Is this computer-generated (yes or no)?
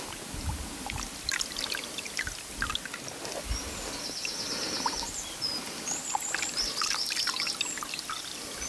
no